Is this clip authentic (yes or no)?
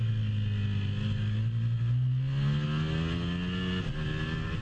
yes